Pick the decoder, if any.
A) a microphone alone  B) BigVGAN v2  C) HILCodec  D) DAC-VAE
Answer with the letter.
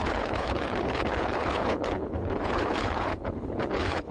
C